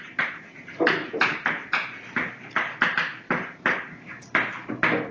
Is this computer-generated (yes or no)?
no